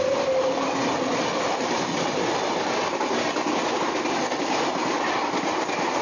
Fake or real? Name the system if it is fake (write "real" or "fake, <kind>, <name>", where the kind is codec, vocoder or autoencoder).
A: real